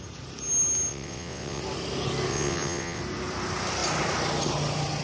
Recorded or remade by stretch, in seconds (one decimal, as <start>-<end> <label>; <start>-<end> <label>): 0.0-0.9 recorded; 0.9-1.6 remade; 1.6-2.3 recorded; 2.3-3.0 remade; 3.0-5.0 recorded